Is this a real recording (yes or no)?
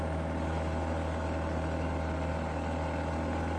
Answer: yes